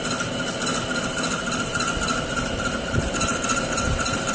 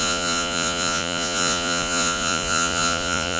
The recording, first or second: first